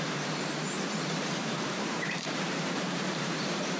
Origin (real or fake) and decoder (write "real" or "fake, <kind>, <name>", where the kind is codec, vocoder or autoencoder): fake, vocoder, BigVGAN v2